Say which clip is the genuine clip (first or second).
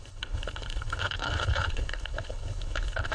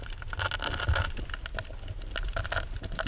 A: second